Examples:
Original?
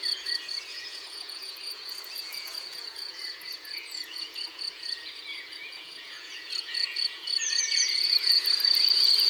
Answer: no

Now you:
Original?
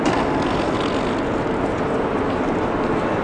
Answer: yes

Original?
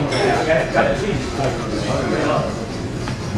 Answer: no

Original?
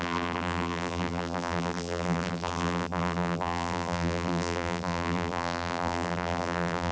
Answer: no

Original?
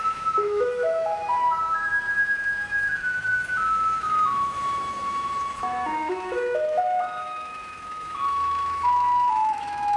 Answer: no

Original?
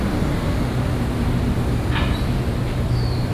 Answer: yes